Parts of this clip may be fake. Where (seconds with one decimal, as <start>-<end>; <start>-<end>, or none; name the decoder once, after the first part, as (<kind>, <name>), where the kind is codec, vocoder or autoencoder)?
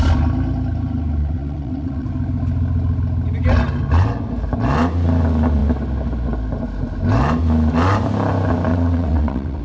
1.2-2.1 (vocoder, WaveNeXt); 8.7-9.6